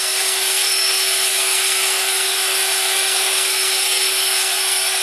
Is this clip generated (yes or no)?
yes